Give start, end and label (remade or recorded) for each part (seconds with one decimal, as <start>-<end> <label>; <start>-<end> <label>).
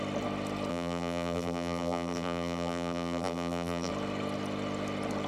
0.0-0.7 recorded; 0.7-3.9 remade; 3.9-5.3 recorded